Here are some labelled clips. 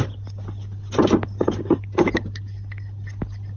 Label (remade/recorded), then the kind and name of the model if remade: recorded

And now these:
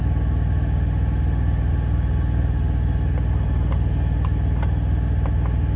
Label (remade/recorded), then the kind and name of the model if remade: recorded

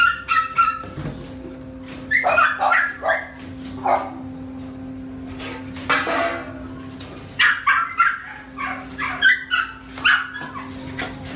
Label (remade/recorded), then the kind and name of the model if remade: recorded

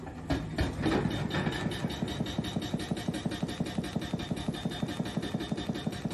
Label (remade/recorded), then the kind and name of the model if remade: recorded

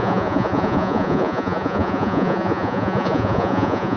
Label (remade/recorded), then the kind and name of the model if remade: remade, vocoder, Vocos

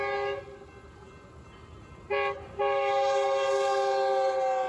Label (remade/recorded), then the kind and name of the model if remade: recorded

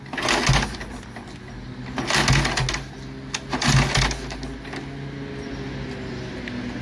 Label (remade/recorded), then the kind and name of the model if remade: recorded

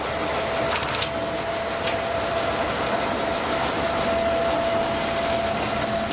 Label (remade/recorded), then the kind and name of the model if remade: recorded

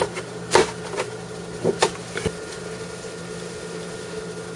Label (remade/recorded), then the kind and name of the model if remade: recorded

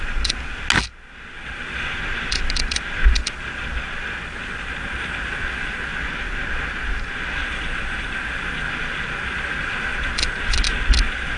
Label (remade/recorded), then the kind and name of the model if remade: recorded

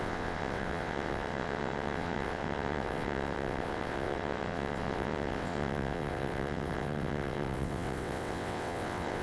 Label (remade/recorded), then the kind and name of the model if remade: remade, vocoder, WaveNeXt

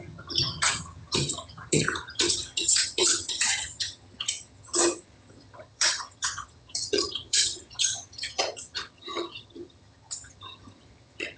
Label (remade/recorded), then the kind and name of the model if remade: remade, vocoder, HiFi-GAN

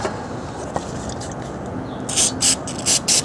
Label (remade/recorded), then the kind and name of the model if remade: recorded